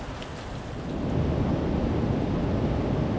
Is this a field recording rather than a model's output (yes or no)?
yes